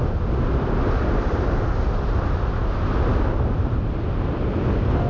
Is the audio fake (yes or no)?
no